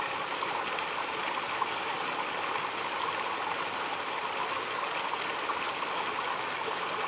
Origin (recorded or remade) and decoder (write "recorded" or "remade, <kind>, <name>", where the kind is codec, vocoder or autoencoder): recorded